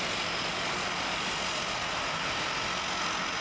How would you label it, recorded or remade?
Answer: recorded